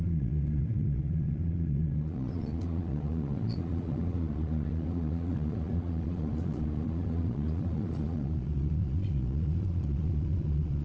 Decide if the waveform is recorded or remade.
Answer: remade